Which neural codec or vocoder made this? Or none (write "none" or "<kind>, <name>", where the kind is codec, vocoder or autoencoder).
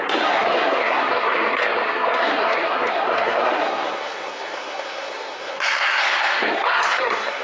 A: codec, SNAC